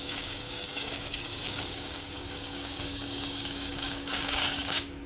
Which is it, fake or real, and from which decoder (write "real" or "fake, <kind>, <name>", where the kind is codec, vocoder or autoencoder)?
fake, codec, DAC